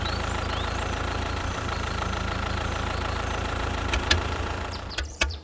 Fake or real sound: fake